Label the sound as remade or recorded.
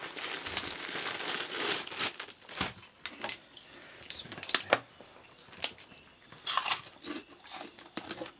recorded